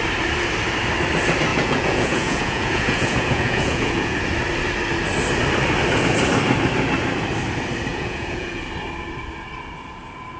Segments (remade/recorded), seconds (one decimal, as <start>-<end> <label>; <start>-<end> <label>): 0.0-1.5 recorded; 1.5-4.2 remade; 4.2-7.9 recorded; 7.9-8.6 remade; 8.6-10.4 recorded